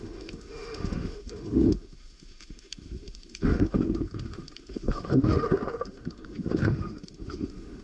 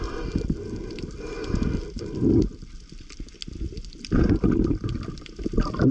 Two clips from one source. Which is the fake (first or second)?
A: first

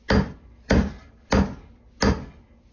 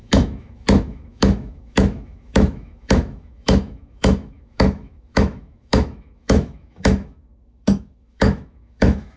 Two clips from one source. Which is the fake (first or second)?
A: second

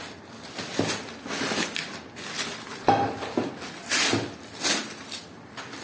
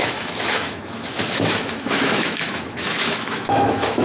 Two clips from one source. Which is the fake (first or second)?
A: second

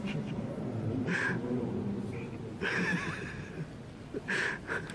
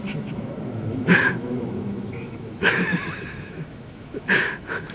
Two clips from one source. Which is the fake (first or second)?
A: second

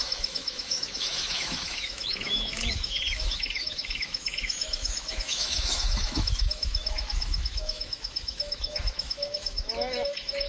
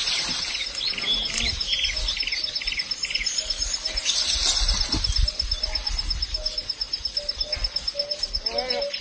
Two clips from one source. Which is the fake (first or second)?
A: first